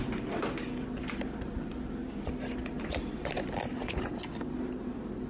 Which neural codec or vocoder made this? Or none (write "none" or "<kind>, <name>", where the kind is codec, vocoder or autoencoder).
none